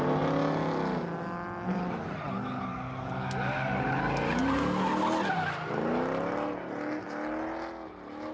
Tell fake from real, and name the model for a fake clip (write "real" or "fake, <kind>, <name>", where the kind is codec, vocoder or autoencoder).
real